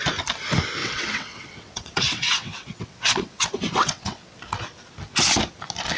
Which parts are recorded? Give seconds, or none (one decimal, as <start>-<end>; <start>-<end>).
0.0-0.8; 4.4-6.0